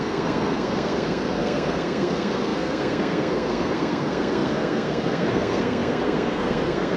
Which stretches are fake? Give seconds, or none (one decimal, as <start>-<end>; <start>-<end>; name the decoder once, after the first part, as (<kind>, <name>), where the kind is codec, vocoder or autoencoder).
0.0-7.0 (codec, SNAC)